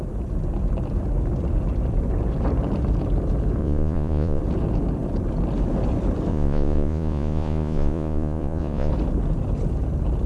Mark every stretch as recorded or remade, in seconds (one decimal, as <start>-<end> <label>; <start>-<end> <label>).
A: 0.0-3.6 recorded; 3.6-4.4 remade; 4.4-6.3 recorded; 6.3-8.9 remade; 8.9-10.3 recorded